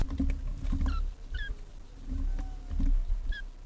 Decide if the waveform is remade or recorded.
recorded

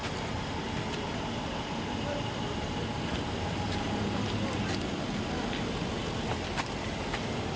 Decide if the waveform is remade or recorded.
recorded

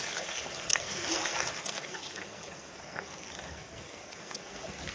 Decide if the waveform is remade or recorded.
remade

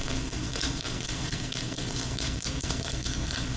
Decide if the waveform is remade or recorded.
remade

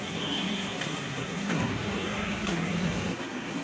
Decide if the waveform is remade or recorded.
remade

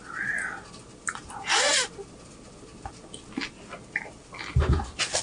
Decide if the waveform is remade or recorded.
recorded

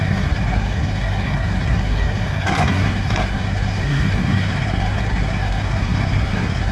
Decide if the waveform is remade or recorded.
remade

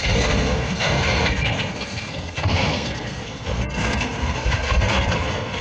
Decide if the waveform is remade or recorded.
remade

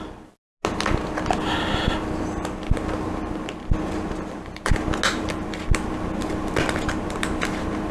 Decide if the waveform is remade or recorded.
recorded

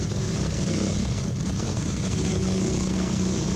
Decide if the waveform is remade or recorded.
remade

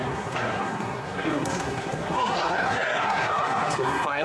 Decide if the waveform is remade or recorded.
remade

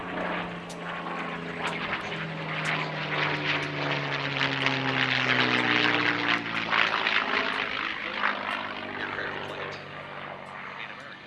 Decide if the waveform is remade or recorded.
recorded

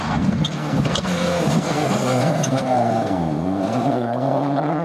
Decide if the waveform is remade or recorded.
remade